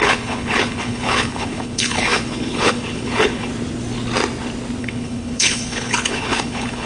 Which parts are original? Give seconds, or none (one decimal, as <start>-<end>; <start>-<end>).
3.5-4.8